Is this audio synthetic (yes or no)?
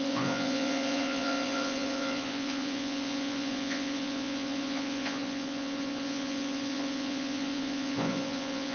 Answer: yes